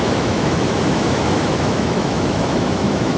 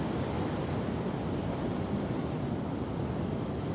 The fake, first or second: first